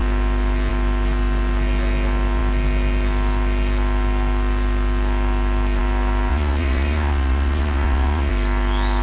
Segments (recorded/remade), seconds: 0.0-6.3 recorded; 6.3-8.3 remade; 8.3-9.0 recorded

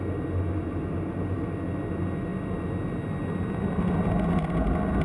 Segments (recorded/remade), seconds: 0.0-5.0 recorded

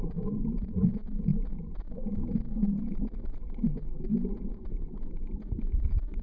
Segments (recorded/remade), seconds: 0.0-1.3 remade; 1.3-3.4 recorded; 3.4-6.2 remade

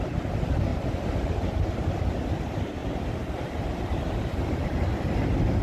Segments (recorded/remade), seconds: 0.0-0.7 recorded; 0.7-1.7 remade; 1.7-2.8 recorded; 2.8-4.1 remade; 4.1-5.6 recorded

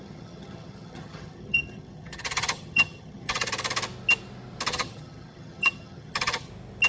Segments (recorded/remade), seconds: 0.0-3.5 remade; 3.5-4.7 recorded; 4.7-6.5 remade; 6.5-6.9 recorded